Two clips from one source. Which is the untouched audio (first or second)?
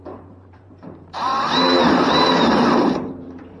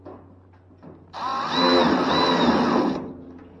second